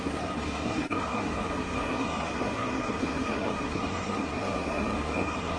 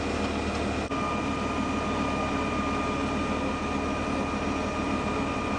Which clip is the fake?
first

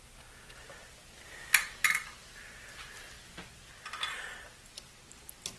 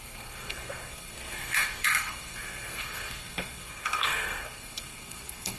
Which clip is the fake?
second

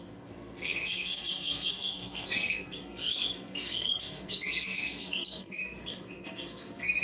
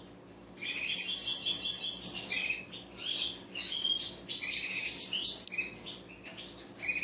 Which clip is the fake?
first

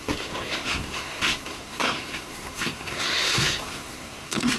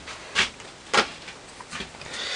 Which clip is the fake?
first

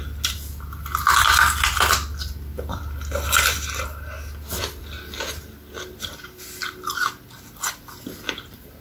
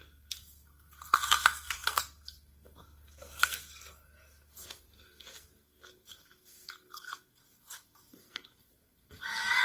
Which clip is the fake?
second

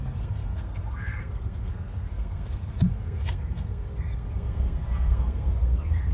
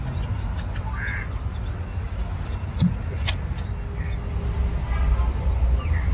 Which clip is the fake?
first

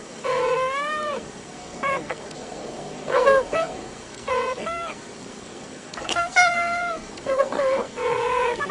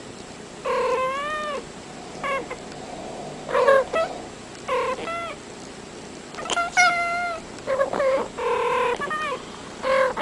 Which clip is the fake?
first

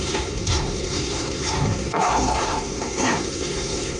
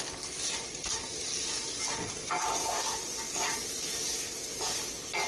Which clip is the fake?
first